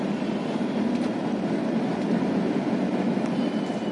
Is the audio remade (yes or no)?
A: no